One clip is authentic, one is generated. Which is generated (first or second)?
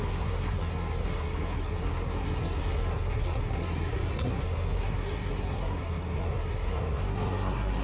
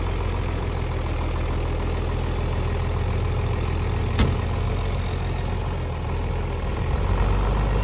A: first